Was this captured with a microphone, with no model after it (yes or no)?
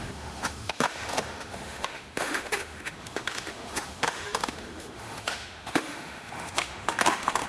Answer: no